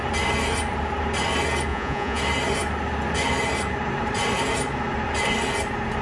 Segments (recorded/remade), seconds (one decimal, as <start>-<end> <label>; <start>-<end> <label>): 0.0-1.7 recorded; 1.7-2.2 remade; 2.2-6.0 recorded